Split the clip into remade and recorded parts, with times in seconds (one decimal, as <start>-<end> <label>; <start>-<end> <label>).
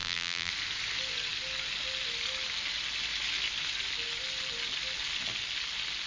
0.0-0.5 remade; 0.5-6.1 recorded